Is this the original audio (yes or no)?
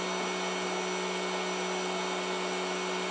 yes